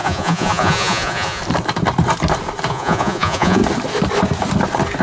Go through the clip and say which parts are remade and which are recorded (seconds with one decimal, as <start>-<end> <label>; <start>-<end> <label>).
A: 0.0-1.4 remade; 1.4-2.7 recorded; 2.7-3.6 remade; 3.6-5.0 recorded